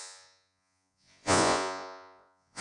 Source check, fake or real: fake